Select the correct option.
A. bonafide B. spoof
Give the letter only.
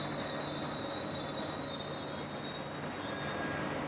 A